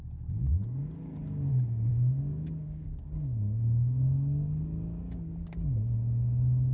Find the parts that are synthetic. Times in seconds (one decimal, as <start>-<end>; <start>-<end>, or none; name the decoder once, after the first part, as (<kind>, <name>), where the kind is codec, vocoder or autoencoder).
0.5-1.5 (codec, DAC); 1.9-4.5

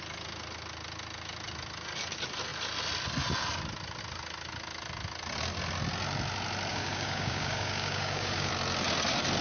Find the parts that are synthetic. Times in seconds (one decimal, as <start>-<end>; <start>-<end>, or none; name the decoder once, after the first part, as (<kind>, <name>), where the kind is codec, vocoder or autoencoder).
6.7-8.5 (codec, DAC)

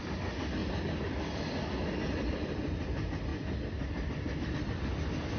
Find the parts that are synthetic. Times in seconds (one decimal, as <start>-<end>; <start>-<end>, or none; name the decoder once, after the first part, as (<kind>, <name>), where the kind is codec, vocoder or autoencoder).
none

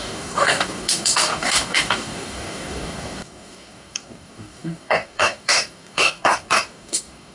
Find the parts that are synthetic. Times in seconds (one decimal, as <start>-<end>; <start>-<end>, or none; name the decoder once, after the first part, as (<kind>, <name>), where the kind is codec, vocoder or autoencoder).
0.0-7.3 (codec, DAC)